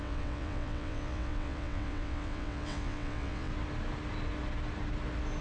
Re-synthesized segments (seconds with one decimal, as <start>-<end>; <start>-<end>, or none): 0.0-3.5